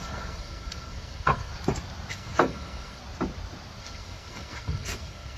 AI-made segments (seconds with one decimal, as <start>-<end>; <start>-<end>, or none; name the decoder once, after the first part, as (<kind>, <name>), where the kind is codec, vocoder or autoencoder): 0.0-1.5 (codec, SNAC); 2.1-3.0; 3.8-5.4